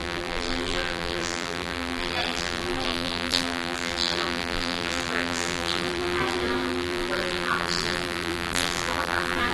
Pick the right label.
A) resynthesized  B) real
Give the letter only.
A